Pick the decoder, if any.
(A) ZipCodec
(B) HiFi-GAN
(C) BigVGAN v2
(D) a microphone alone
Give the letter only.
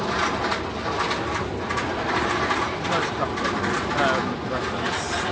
D